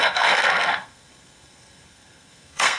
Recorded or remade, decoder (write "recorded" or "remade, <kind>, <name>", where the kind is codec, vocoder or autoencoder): remade, codec, SNAC